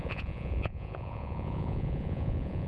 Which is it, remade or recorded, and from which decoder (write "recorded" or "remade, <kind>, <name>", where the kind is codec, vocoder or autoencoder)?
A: remade, vocoder, Vocos